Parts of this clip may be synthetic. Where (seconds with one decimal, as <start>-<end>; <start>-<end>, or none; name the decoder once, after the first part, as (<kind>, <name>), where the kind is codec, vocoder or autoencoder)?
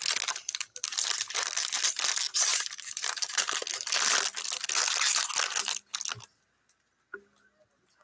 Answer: 2.5-3.4 (vocoder, BigVGAN v2)